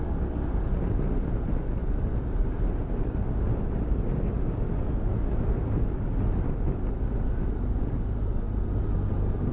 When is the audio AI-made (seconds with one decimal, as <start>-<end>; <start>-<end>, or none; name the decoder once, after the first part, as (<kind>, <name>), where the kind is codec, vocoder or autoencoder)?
1.8-2.6 (vocoder, BigVGAN v2)